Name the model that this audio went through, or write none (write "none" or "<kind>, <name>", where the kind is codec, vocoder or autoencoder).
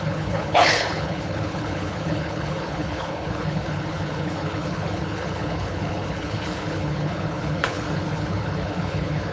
codec, HILCodec